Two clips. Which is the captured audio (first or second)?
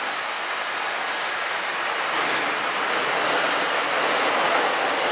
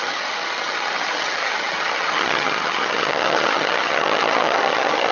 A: first